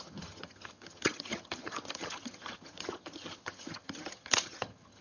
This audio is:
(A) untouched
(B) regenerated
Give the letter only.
B